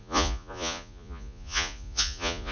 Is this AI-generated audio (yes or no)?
yes